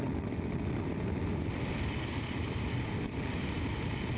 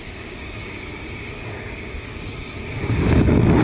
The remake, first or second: second